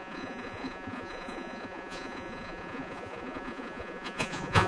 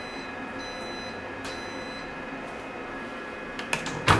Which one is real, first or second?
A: second